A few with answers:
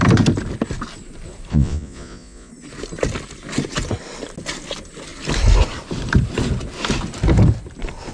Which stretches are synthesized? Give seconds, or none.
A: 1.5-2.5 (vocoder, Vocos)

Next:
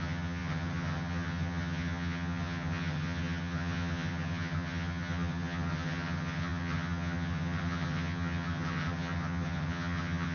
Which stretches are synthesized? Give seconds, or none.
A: 0.0-10.3 (vocoder, HiFi-GAN)

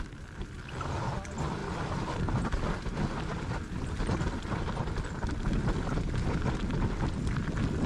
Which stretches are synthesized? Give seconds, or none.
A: none

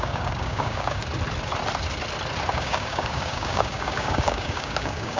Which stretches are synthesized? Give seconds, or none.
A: 0.0-1.0 (codec, DAC); 2.5-5.2

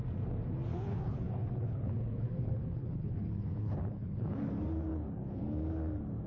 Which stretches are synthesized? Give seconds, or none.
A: 0.7-4.5 (codec, HILCodec); 4.9-5.4